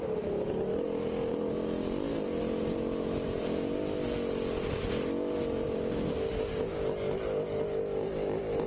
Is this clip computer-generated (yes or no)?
no